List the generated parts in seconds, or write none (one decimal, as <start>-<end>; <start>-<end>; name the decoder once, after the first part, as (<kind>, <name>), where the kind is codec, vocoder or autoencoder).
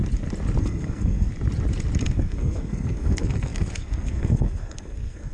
0.6-1.3 (codec, SNAC); 2.0-5.3